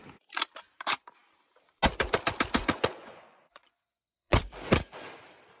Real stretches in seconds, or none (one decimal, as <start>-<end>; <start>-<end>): 0.0-2.6; 4.4-5.6